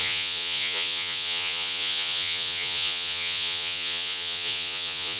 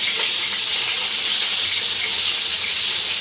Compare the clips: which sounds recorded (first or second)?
second